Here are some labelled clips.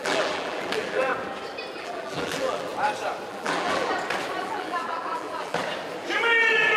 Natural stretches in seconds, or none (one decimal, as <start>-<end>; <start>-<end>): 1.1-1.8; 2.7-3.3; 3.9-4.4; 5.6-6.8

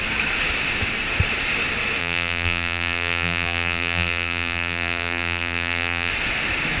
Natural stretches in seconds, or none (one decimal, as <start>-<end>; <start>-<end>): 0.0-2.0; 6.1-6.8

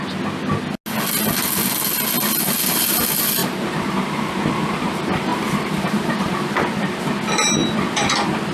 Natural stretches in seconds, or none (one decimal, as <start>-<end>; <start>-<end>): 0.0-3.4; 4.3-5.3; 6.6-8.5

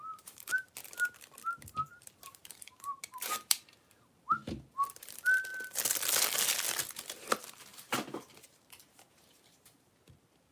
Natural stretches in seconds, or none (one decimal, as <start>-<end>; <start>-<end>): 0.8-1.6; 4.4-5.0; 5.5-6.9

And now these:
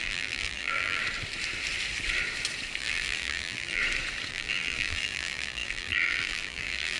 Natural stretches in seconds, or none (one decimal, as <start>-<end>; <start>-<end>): 1.0-2.8; 3.8-4.3